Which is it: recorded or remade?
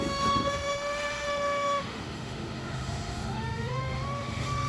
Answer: remade